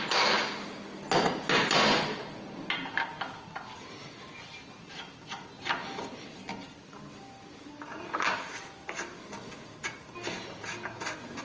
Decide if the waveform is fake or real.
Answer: real